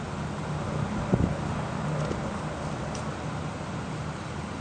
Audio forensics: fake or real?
real